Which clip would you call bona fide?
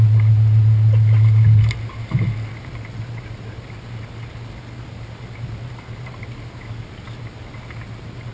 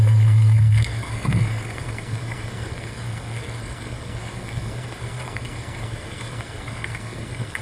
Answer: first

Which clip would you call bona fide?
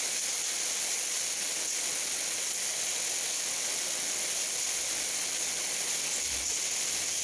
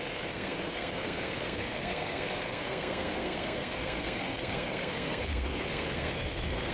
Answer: first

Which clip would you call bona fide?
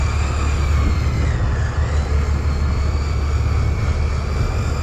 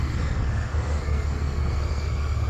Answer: first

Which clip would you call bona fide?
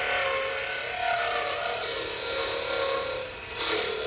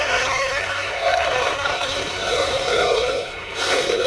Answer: first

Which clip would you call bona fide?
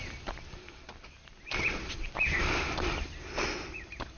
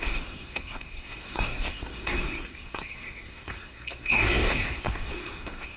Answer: first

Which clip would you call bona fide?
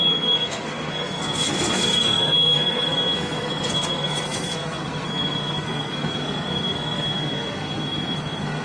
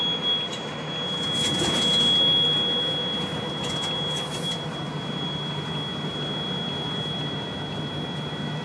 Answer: second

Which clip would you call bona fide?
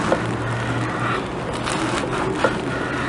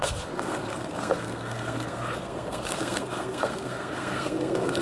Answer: first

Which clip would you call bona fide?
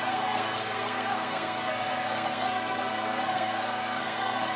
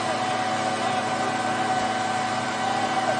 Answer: second